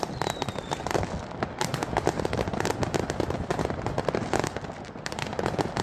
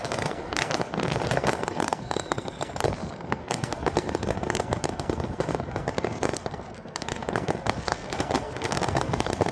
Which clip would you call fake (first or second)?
second